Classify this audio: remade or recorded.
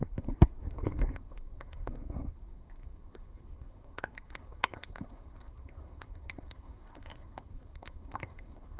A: remade